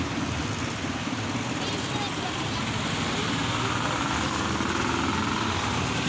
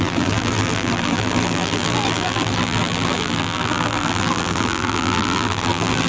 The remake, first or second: second